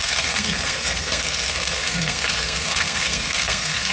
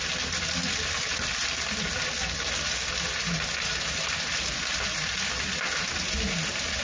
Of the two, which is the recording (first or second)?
second